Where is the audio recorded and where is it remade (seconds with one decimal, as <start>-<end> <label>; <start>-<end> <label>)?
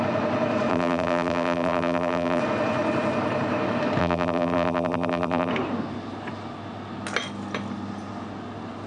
0.0-0.7 recorded; 0.7-2.4 remade; 2.4-4.0 recorded; 4.0-5.5 remade; 5.5-8.9 recorded